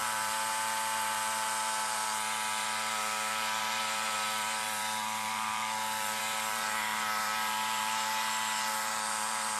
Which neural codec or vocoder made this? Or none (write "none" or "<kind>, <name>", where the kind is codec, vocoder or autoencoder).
vocoder, BigVGAN v2